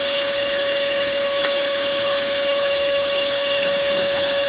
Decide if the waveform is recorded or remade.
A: remade